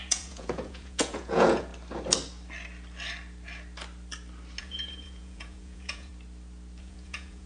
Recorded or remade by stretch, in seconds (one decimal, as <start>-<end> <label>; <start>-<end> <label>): 0.0-1.7 remade; 1.7-4.6 recorded; 4.6-6.1 remade; 6.1-6.8 recorded; 6.8-7.5 remade